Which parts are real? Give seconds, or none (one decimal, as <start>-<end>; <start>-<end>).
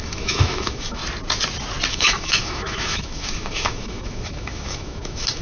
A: 1.0-1.9